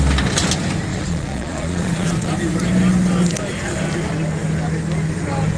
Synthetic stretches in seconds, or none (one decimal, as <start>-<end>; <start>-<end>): 0.9-2.3